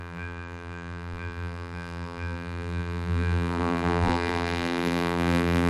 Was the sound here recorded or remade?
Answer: remade